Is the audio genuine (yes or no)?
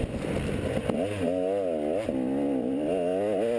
yes